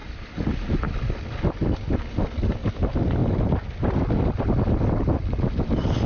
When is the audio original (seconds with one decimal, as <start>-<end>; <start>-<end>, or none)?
0.9-6.1

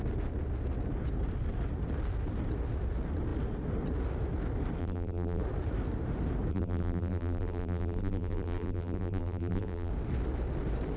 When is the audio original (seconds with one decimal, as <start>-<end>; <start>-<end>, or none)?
0.0-4.8; 5.4-6.5; 9.9-11.0

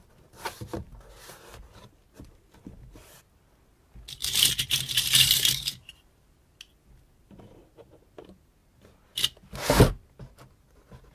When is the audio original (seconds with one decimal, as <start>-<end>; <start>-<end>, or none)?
0.0-4.2; 6.3-11.1